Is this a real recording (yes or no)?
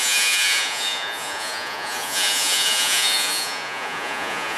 no